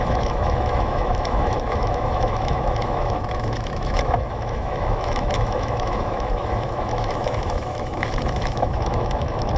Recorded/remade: remade